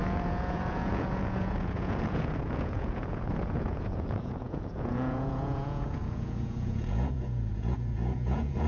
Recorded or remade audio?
remade